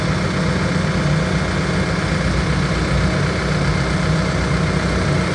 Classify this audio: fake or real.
real